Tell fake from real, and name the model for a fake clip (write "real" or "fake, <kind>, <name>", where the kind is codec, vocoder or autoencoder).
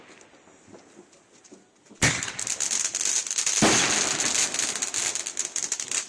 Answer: real